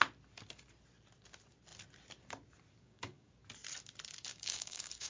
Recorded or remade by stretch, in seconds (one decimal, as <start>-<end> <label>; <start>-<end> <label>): 0.0-2.8 recorded; 2.8-3.3 remade; 3.3-4.3 recorded; 4.3-5.1 remade